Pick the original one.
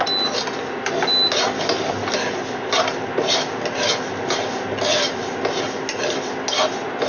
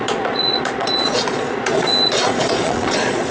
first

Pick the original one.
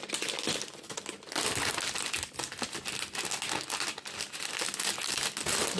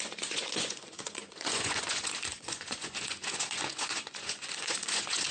first